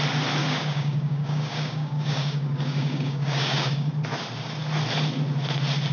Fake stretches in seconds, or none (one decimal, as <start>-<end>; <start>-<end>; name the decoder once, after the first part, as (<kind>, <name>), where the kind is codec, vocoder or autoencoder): 0.4-3.9 (codec, DAC)